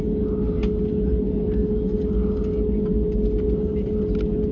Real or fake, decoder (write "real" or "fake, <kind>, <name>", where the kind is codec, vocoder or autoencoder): real